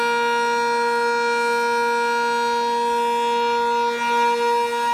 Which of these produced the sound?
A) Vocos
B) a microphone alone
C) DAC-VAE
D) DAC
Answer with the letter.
B